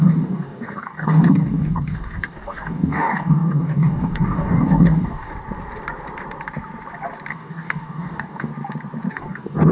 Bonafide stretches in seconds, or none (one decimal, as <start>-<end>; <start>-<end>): 5.3-7.3; 8.5-9.1